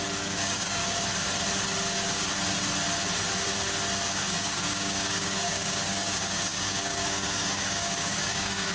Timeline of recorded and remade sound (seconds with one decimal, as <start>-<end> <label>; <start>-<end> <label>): 0.0-0.8 remade; 0.8-4.1 recorded; 4.1-8.7 remade